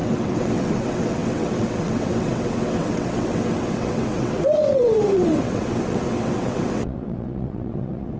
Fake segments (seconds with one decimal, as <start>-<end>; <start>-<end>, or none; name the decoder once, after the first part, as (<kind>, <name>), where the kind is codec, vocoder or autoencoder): 0.0-8.2 (vocoder, WaveNeXt)